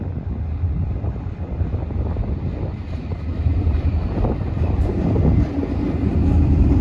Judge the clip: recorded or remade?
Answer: remade